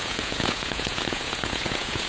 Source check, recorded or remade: remade